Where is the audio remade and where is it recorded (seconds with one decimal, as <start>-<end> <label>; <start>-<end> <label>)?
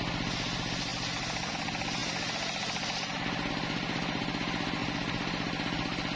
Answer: 0.0-6.2 recorded